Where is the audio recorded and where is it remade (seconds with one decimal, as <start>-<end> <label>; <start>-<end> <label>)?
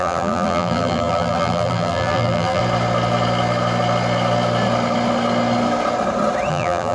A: 0.0-2.6 remade; 2.6-6.5 recorded; 6.5-6.9 remade